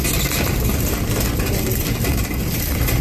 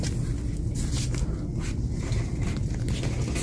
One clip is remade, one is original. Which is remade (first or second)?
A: first